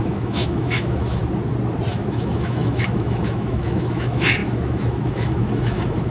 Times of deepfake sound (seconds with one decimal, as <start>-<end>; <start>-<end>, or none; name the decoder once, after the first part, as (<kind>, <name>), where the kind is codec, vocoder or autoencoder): 0.0-1.2 (autoencoder, DAC-VAE); 1.9-6.1